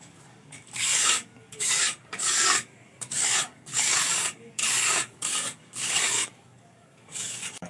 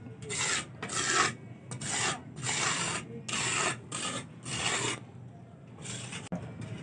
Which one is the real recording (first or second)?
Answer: second